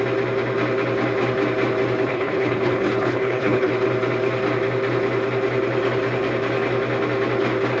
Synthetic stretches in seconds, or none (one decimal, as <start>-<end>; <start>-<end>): 2.1-3.7